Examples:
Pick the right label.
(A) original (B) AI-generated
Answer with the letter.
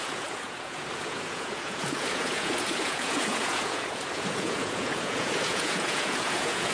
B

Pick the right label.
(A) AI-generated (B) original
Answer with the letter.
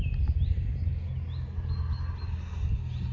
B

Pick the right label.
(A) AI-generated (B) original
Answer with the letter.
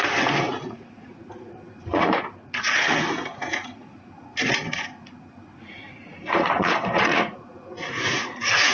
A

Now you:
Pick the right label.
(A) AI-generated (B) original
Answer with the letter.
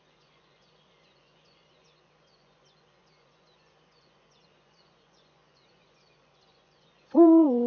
A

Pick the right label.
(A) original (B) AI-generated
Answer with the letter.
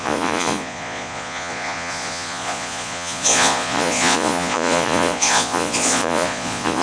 B